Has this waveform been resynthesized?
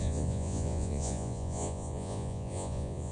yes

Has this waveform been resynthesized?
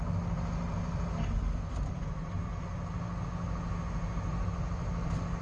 no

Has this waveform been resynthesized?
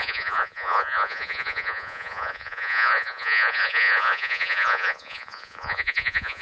yes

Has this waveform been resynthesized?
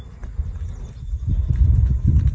no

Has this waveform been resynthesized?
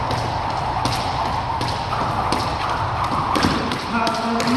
no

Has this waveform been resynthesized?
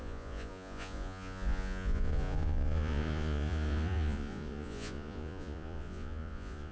yes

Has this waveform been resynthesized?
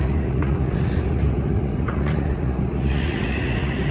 yes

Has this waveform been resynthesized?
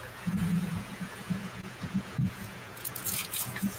yes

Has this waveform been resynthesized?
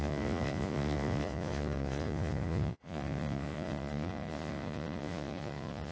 yes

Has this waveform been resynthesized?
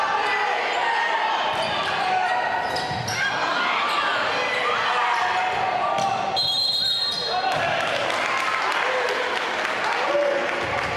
no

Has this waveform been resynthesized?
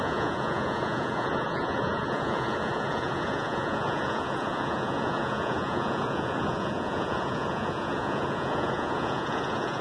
yes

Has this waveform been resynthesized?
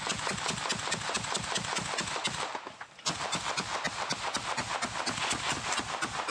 no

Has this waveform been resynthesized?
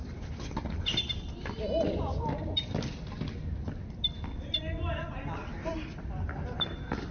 no